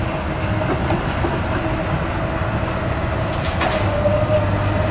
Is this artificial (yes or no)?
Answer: no